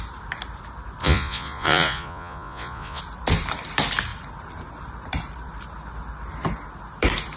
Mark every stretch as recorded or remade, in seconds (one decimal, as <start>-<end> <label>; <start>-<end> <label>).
0.0-1.0 recorded; 1.0-3.0 remade; 3.0-7.4 recorded